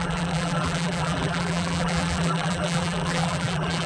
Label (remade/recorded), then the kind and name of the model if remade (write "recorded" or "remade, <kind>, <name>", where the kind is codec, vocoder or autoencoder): remade, vocoder, BigVGAN v2